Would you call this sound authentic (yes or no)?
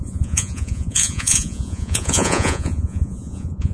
no